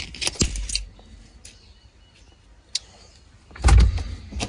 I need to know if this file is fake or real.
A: real